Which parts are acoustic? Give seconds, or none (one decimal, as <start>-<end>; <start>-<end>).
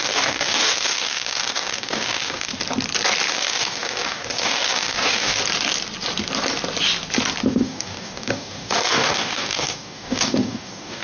2.5-3.3; 5.4-7.5